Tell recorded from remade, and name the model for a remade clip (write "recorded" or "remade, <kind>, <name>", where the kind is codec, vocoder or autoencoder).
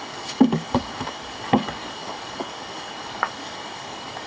remade, codec, DAC